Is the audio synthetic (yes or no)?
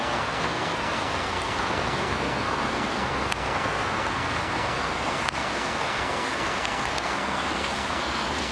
yes